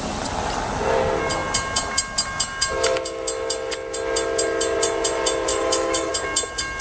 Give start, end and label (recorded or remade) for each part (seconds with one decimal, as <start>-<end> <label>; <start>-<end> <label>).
0.0-5.5 recorded; 5.5-6.1 remade; 6.1-6.8 recorded